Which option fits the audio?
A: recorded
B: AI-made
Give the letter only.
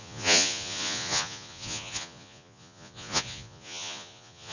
B